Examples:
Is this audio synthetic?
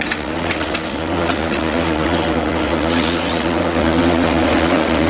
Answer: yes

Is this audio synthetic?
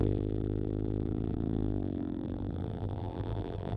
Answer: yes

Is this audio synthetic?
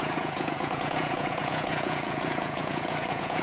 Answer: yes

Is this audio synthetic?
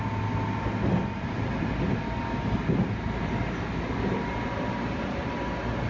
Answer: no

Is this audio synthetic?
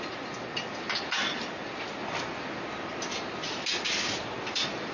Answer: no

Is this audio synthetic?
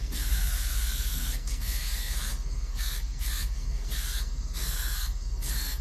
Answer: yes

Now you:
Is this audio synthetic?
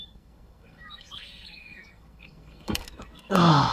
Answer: yes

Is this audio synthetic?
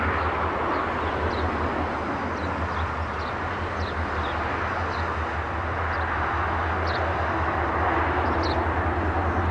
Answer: no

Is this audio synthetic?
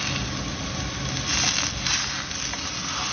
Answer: no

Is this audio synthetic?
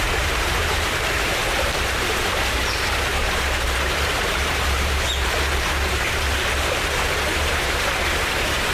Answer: yes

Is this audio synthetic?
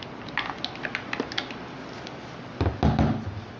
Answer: no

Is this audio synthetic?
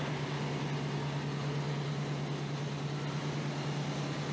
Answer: no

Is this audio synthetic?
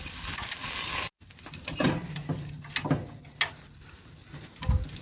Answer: no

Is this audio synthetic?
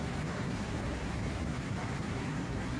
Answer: yes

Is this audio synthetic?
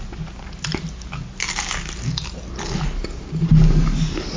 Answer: no